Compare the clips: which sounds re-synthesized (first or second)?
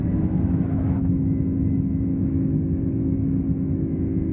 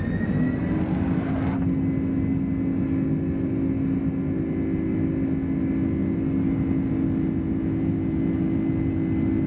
first